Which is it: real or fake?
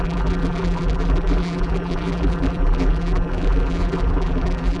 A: fake